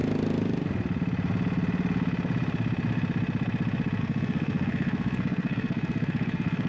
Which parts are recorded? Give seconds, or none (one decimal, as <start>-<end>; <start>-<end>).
0.0-4.0